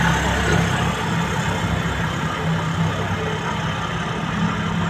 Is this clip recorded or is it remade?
recorded